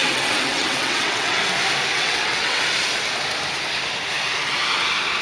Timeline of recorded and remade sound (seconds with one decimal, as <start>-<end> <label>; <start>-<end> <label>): 0.0-1.4 remade; 1.4-1.9 recorded; 1.9-2.6 remade; 2.6-5.2 recorded